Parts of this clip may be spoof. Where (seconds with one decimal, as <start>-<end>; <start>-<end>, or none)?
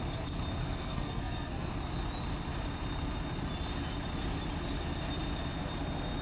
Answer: 0.6-1.7